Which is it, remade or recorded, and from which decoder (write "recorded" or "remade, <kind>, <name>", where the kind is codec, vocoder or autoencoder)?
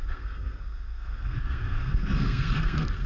remade, codec, SNAC